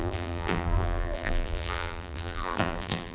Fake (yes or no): yes